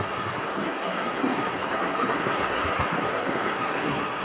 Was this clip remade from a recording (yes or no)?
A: yes